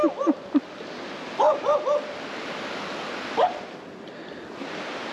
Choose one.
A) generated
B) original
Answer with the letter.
B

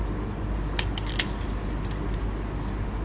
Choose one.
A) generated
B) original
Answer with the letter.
B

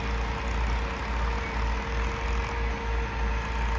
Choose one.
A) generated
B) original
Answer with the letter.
B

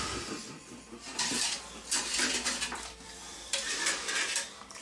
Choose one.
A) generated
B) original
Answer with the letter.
A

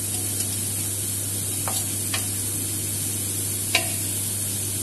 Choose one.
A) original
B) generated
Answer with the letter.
A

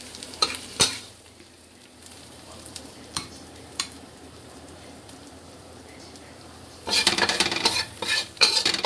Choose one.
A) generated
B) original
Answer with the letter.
A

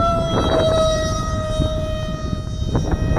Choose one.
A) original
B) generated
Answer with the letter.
B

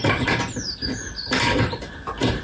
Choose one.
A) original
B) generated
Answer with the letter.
B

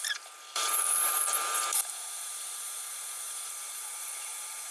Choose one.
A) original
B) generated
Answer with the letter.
B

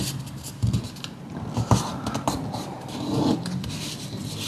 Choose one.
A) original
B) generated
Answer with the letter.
A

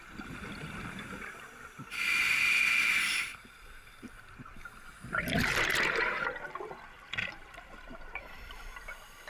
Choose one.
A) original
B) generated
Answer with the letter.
B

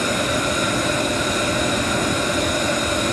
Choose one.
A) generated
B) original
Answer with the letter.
B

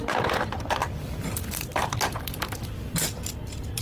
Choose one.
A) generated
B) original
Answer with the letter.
A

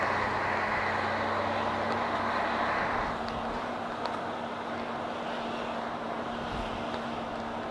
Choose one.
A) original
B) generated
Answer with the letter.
A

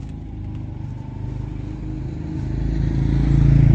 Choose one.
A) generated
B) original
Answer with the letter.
B